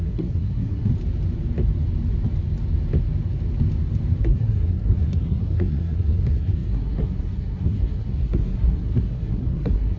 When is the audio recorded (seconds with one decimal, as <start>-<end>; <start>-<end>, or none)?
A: 0.9-4.2